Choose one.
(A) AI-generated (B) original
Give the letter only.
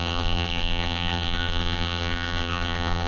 A